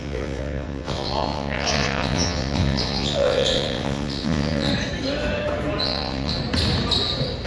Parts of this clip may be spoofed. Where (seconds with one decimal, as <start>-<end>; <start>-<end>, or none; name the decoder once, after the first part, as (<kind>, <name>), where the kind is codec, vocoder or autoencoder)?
0.0-4.7 (vocoder, WaveNeXt); 5.8-6.4